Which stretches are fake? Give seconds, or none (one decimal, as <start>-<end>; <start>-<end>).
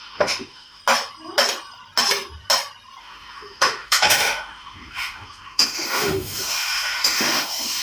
0.0-0.8; 3.0-7.8